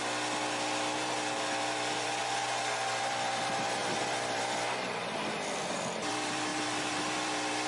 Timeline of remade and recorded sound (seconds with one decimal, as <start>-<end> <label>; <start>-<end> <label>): 0.0-1.6 recorded; 1.6-2.2 remade; 2.2-3.0 recorded; 3.0-7.7 remade